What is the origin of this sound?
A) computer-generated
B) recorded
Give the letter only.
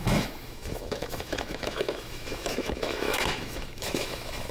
A